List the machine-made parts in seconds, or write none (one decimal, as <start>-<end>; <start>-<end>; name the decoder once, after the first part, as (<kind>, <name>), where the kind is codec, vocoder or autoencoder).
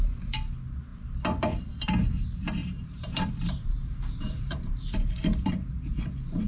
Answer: 2.6-6.0 (vocoder, BigVGAN v2)